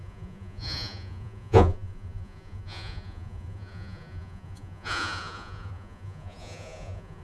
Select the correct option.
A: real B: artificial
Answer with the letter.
B